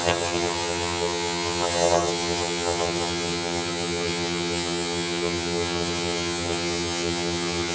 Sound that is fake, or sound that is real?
fake